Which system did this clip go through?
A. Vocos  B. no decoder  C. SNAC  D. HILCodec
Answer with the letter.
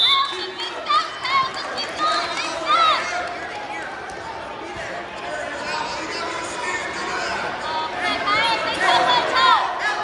B